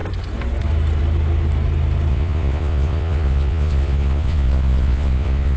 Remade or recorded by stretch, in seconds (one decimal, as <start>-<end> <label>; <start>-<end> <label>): 0.0-2.1 recorded; 2.1-5.6 remade